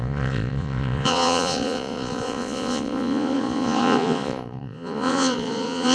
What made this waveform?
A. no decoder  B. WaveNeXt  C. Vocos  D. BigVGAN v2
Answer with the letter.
C